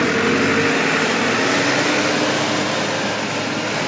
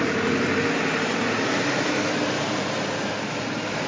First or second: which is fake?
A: second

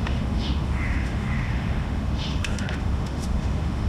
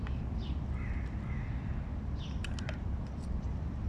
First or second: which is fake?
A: first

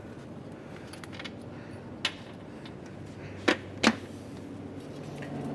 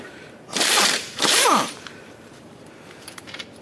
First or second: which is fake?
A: second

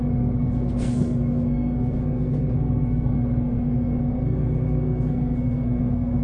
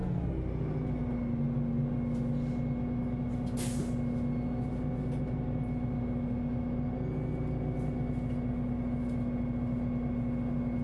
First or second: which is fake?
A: first